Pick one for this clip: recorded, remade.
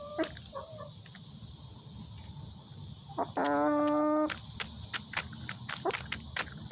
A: recorded